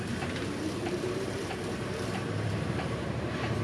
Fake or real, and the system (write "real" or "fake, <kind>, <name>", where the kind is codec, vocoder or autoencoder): fake, vocoder, BigVGAN v2